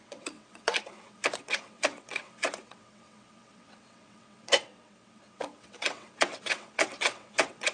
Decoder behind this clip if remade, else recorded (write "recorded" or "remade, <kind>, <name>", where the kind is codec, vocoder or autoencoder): remade, vocoder, WaveNeXt